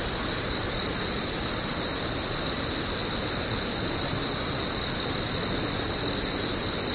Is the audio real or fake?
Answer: real